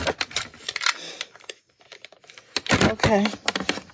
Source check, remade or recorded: recorded